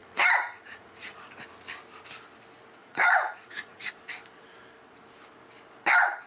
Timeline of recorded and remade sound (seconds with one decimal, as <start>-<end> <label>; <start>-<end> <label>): 0.0-1.4 remade; 1.4-2.8 recorded; 2.8-3.9 remade; 3.9-6.3 recorded